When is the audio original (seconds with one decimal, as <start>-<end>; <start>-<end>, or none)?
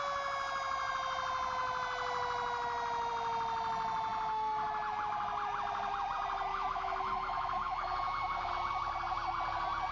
0.0-6.5; 8.5-9.9